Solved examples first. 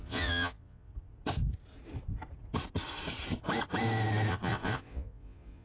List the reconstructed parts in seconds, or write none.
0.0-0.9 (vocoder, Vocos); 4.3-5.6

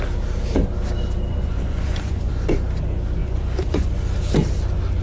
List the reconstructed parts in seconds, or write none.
1.3-2.3 (vocoder, Vocos); 3.2-3.9